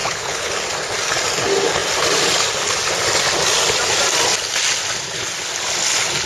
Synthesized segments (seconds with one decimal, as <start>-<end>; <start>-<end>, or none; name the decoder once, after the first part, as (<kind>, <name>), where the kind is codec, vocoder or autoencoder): 0.0-0.5 (codec, HILCodec)